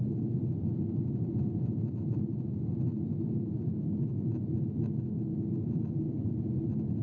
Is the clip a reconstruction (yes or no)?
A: no